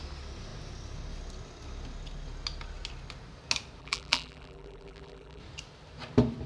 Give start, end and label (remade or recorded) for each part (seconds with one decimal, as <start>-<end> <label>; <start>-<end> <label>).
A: 0.0-3.8 recorded; 3.8-5.4 remade; 5.4-6.5 recorded